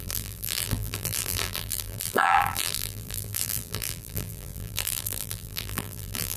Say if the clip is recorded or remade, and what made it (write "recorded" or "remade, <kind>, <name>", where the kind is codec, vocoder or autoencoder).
remade, vocoder, BigVGAN v2